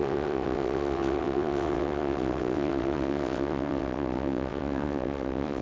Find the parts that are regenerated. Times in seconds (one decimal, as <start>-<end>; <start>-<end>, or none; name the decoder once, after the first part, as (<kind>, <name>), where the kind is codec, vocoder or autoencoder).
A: 0.0-5.6 (vocoder, WaveNeXt)